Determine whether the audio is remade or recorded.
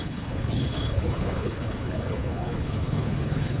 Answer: remade